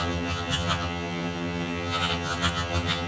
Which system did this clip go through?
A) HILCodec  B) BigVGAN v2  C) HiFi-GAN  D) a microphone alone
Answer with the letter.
C